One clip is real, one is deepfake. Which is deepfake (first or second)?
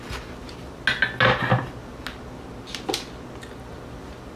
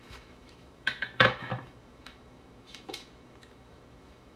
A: second